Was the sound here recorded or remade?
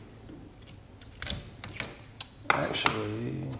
recorded